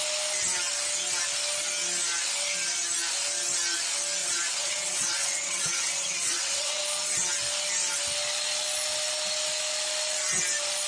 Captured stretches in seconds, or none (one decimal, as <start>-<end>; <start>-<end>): 0.0-4.2; 6.8-10.9